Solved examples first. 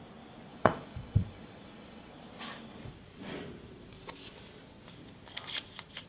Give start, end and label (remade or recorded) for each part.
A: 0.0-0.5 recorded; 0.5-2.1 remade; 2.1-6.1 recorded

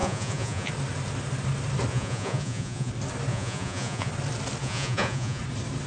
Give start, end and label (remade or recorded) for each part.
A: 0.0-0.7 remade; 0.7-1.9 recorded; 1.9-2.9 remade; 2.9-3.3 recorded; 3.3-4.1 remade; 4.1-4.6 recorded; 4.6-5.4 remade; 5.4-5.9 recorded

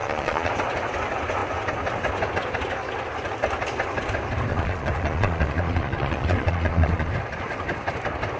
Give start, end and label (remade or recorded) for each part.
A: 0.0-0.5 remade; 0.5-4.5 recorded; 4.5-7.1 remade; 7.1-8.4 recorded

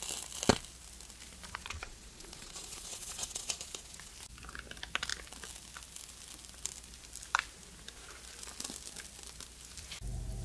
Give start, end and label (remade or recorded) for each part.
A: 0.0-1.6 recorded; 1.6-4.1 remade; 4.1-10.4 recorded

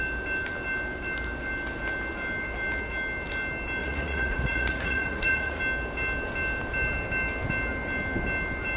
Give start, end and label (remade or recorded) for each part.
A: 0.0-3.8 recorded; 3.8-5.6 remade; 5.6-8.8 recorded